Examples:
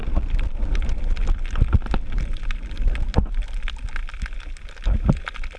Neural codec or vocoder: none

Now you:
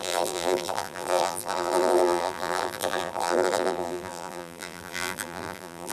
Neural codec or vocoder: vocoder, BigVGAN v2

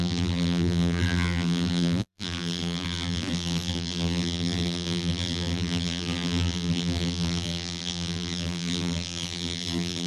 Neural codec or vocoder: vocoder, BigVGAN v2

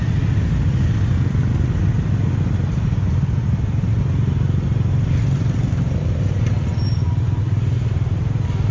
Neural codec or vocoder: none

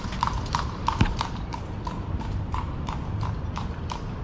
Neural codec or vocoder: vocoder, BigVGAN v2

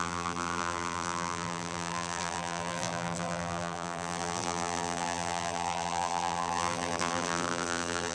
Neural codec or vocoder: vocoder, BigVGAN v2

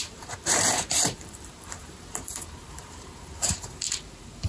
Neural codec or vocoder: vocoder, BigVGAN v2